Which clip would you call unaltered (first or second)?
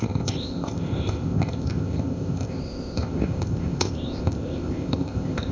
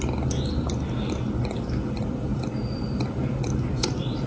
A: second